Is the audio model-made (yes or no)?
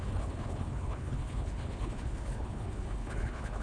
yes